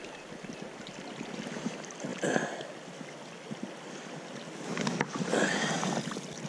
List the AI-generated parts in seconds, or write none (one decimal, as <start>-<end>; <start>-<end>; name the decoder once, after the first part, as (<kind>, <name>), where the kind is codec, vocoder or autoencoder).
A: none